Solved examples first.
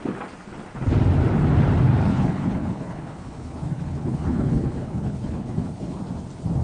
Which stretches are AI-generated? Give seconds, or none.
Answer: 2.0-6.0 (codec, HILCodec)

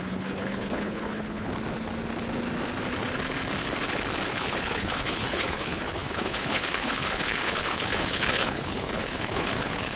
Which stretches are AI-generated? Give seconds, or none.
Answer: 0.0-1.5 (codec, HILCodec); 4.3-10.0

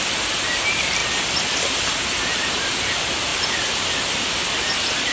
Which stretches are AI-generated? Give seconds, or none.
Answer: none

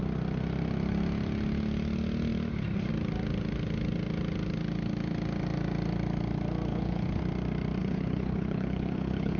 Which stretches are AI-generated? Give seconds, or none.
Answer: 6.7-7.2 (codec, HILCodec); 7.8-9.4

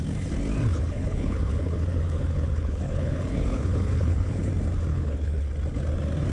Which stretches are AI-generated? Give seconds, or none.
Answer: 0.7-4.5 (codec, HILCodec); 4.9-5.5